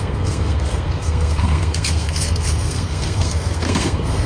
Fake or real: fake